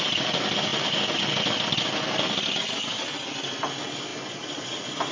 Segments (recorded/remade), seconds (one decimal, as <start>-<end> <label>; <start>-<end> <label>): 0.0-5.1 recorded